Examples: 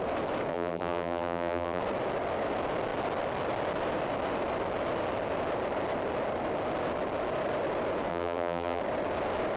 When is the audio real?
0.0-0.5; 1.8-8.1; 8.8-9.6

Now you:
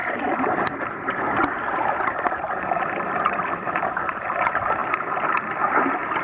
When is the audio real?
3.7-6.2

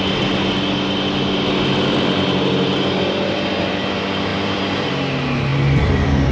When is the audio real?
0.0-4.3; 4.9-5.5

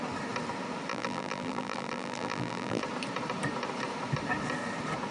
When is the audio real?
0.0-0.9; 2.8-5.1